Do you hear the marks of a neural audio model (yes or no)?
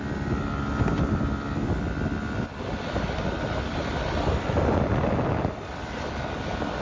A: no